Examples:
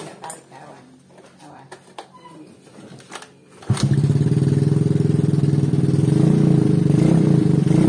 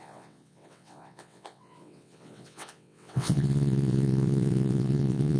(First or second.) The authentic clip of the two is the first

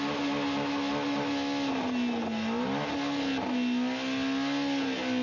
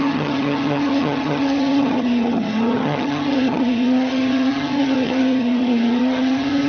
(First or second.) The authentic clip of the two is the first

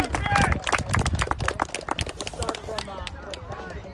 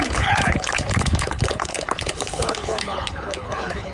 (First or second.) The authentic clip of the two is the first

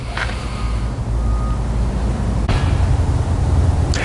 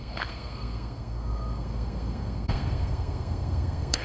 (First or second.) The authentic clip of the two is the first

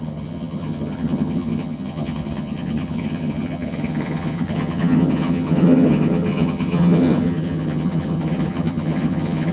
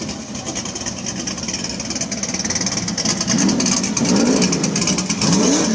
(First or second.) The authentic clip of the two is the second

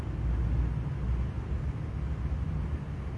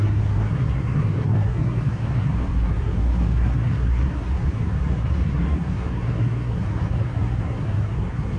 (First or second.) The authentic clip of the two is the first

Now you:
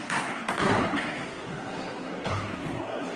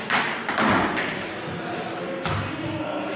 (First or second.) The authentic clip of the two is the second